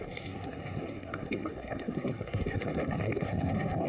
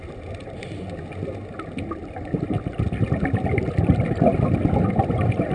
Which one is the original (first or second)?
second